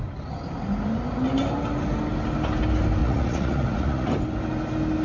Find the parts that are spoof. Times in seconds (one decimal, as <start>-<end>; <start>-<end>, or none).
3.0-4.1